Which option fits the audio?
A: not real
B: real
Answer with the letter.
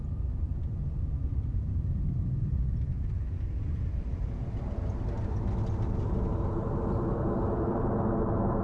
B